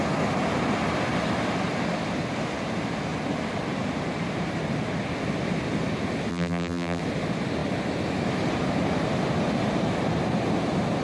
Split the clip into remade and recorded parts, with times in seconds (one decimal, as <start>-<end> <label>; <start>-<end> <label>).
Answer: 0.0-6.3 recorded; 6.3-7.0 remade; 7.0-11.0 recorded